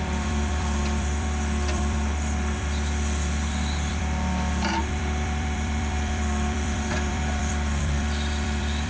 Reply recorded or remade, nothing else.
remade